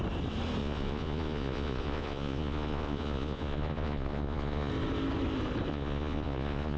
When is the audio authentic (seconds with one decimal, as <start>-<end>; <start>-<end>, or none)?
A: 0.0-0.6; 4.7-5.7